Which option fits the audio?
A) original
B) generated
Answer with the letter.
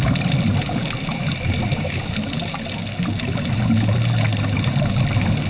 A